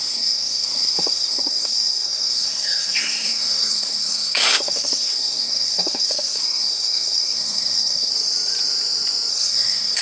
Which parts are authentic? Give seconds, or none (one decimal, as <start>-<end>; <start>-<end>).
8.1-9.3